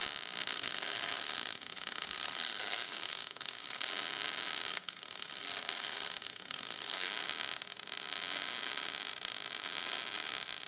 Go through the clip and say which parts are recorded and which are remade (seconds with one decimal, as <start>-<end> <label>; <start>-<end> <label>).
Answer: 0.0-0.5 recorded; 0.5-3.9 remade; 3.9-4.7 recorded; 4.7-7.1 remade; 7.1-10.7 recorded